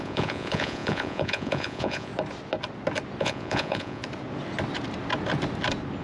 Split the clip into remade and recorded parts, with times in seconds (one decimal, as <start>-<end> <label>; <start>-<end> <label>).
0.0-2.1 remade; 2.1-3.2 recorded; 3.2-4.0 remade; 4.0-6.0 recorded